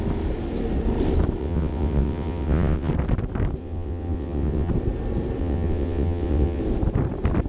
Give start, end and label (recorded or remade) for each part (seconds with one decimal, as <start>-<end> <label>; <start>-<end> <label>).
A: 0.0-1.4 recorded; 1.4-2.9 remade; 2.9-3.6 recorded; 3.6-4.7 remade; 4.7-5.4 recorded; 5.4-6.6 remade; 6.6-7.5 recorded